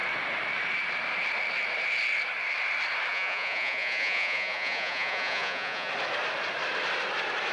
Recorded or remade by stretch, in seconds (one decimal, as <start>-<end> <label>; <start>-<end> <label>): 0.0-3.1 recorded; 3.1-5.9 remade; 5.9-7.5 recorded

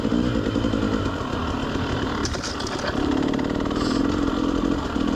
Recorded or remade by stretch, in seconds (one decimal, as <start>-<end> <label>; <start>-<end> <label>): 0.0-1.4 recorded; 1.4-4.0 remade; 4.0-5.2 recorded

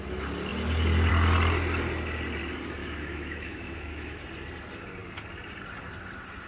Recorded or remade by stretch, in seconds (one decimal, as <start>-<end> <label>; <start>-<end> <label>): 0.0-2.8 recorded; 2.8-4.2 remade; 4.2-6.5 recorded

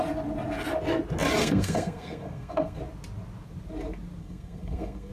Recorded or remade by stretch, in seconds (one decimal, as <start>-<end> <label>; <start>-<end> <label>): 0.0-1.4 recorded; 1.4-2.8 remade; 2.8-4.2 recorded; 4.2-5.1 remade